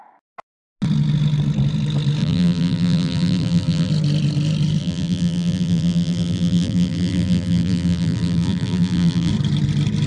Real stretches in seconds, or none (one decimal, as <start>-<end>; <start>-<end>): 0.0-2.2; 3.9-4.8; 9.3-10.1

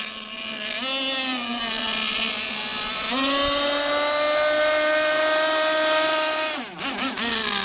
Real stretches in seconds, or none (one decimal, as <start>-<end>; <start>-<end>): 0.0-7.6

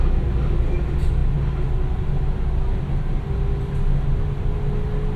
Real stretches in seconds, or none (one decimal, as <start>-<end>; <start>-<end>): 0.0-5.2

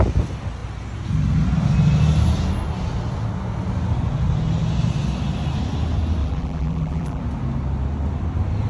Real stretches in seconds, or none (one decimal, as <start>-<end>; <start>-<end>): 0.0-6.2; 7.2-8.7

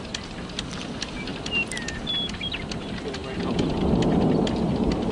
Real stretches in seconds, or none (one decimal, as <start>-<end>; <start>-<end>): 0.0-5.1

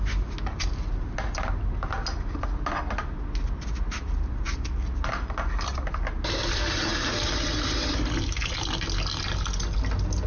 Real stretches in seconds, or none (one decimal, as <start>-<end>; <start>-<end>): 0.0-10.3

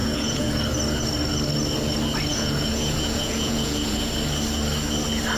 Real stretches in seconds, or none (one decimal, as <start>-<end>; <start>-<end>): 0.5-2.3; 4.1-5.4

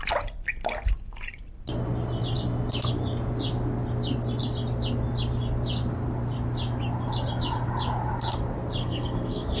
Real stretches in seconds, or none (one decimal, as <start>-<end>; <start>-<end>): 0.0-8.8